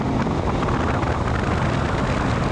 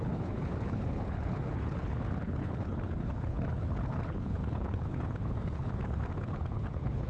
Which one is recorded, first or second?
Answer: first